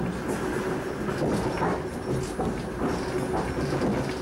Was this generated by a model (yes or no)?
no